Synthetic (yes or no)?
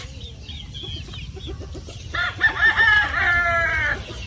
no